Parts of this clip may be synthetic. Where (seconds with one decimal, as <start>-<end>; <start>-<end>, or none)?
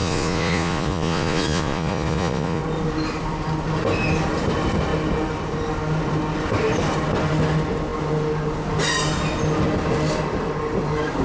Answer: 0.0-2.6